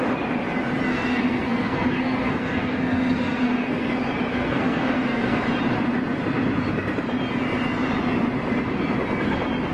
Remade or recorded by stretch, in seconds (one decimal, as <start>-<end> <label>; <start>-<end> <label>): 0.0-0.9 recorded; 0.9-3.9 remade; 3.9-4.3 recorded; 4.3-5.4 remade; 5.4-9.7 recorded